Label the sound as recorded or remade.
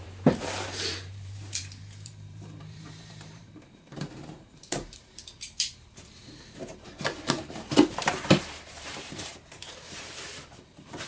remade